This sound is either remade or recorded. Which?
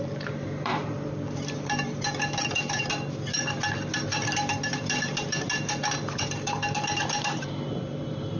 remade